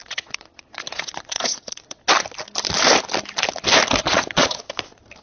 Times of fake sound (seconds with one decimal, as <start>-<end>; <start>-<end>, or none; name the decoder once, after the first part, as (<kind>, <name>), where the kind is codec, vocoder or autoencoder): 0.0-2.0 (vocoder, Vocos); 4.0-4.6

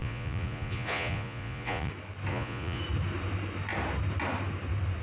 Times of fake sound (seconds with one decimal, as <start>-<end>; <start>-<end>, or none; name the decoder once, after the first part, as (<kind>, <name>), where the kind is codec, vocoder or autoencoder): 0.0-1.9 (vocoder, Vocos); 2.3-2.8

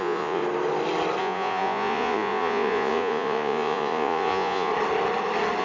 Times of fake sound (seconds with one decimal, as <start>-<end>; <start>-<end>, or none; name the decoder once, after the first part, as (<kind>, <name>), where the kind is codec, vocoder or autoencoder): 0.0-0.4 (vocoder, Vocos); 1.2-4.7

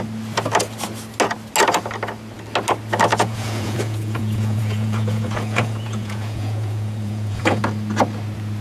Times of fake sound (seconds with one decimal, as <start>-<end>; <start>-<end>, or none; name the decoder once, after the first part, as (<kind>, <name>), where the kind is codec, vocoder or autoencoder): 3.1-7.6 (vocoder, Vocos)

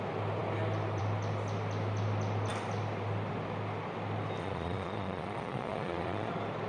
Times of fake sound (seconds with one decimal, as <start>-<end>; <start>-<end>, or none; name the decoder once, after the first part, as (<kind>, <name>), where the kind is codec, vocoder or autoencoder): 4.4-6.3 (vocoder, Vocos)